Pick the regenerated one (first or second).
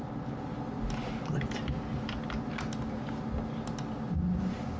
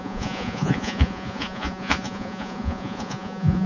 second